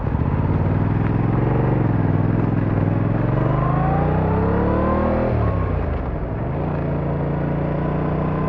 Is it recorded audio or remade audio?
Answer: recorded